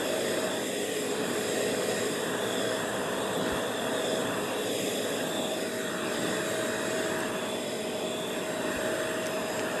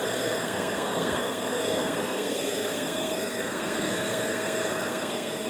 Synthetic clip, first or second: second